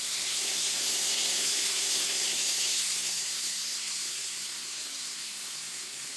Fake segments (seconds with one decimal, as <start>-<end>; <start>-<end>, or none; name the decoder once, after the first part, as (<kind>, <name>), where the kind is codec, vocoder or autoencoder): 0.0-6.2 (codec, SNAC)